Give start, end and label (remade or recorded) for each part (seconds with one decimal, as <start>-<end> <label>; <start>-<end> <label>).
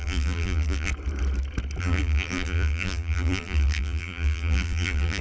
0.0-0.9 remade; 0.9-1.8 recorded; 1.8-5.2 remade